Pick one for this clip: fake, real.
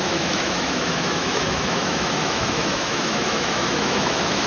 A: fake